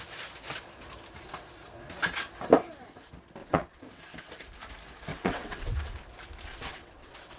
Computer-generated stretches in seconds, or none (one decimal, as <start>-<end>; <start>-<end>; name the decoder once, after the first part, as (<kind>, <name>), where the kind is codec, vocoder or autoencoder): 3.4-4.0 (vocoder, WaveNeXt); 5.1-5.9; 6.5-7.4